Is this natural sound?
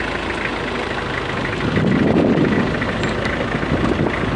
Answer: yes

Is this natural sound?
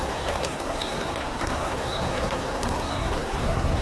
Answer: no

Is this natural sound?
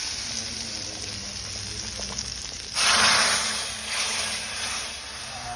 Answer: yes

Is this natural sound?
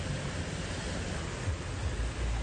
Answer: yes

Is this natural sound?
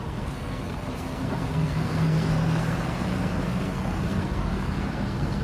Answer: no